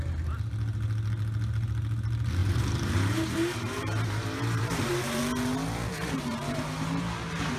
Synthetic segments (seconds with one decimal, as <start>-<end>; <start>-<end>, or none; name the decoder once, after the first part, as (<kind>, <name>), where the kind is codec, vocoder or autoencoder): 2.4-5.2 (vocoder, BigVGAN v2); 5.9-7.6